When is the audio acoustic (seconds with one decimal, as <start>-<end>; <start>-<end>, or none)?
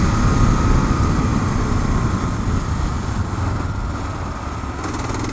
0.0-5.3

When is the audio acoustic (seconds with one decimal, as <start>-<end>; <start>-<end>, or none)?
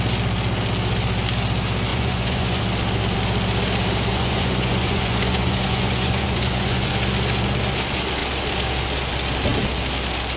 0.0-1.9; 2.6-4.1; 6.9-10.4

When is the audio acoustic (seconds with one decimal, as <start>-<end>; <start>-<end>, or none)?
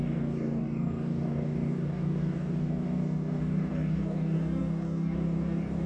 none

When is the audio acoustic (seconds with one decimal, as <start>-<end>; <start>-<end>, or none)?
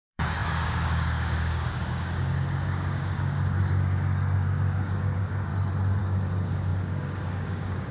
5.5-6.0